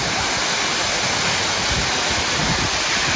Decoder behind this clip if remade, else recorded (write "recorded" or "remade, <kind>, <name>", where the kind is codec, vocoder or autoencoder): recorded